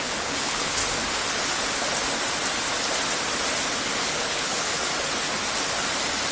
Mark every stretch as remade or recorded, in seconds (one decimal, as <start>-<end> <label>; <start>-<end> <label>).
0.0-0.8 remade; 0.8-4.0 recorded; 4.0-4.9 remade; 4.9-6.3 recorded